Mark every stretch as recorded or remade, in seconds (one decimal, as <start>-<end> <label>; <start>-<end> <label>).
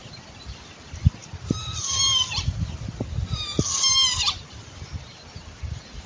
0.0-6.1 recorded